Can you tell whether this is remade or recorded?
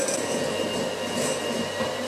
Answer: recorded